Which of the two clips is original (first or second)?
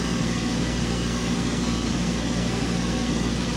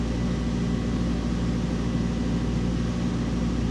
second